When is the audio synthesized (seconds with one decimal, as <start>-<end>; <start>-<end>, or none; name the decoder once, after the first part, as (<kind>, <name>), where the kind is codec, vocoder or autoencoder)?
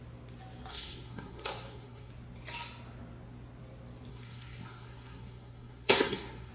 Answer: 0.7-2.1 (codec, SNAC); 4.1-6.5